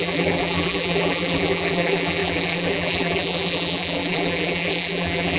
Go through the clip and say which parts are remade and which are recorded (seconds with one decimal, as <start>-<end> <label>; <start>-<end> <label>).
0.0-5.4 remade